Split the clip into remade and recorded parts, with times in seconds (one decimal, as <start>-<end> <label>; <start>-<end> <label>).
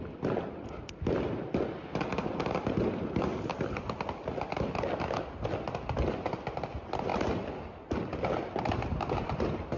0.0-9.8 recorded